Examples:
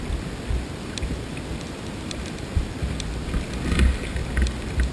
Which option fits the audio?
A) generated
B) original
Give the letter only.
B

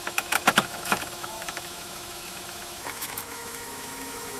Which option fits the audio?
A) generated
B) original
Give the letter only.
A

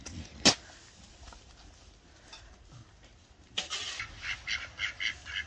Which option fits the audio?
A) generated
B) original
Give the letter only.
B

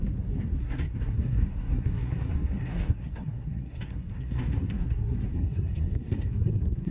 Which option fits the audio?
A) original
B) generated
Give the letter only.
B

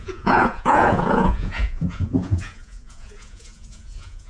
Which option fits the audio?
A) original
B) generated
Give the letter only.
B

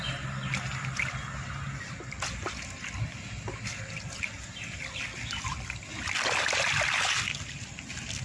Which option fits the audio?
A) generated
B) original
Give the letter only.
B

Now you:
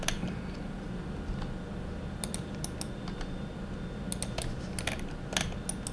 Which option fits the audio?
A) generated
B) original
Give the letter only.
B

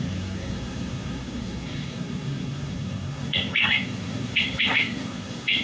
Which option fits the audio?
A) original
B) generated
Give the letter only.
B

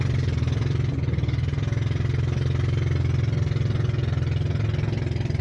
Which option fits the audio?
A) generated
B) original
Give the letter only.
B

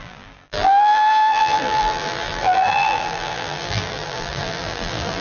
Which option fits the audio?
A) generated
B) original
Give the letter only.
A